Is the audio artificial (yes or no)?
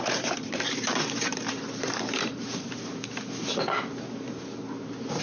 yes